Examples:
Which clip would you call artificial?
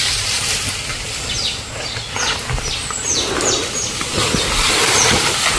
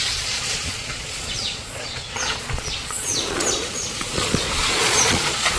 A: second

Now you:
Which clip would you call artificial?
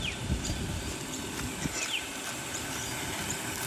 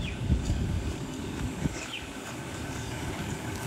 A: second